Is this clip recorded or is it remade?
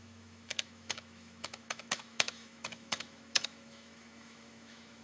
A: remade